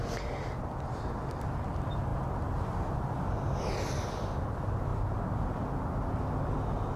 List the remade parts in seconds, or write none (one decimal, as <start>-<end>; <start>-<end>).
none